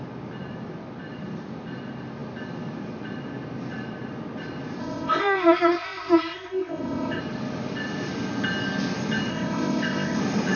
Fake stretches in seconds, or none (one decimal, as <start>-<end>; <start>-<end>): 4.8-7.2; 9.3-10.2